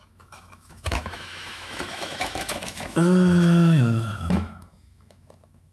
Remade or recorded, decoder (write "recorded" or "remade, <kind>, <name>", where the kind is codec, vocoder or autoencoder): remade, autoencoder, DAC-VAE